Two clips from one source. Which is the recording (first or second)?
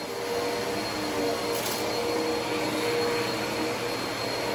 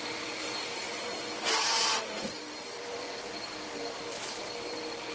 first